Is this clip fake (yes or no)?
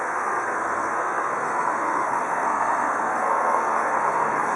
yes